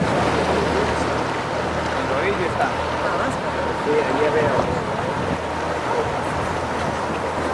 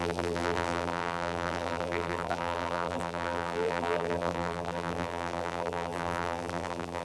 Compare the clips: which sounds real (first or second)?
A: first